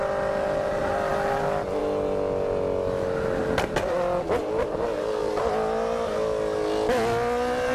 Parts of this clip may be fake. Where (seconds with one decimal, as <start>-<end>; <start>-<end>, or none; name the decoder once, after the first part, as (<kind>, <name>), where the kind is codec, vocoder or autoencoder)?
4.4-5.3 (vocoder, BigVGAN v2)